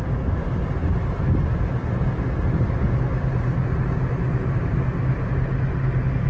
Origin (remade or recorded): recorded